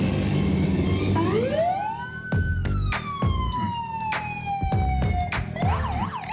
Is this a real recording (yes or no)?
yes